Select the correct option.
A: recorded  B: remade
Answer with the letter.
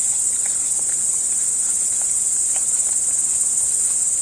A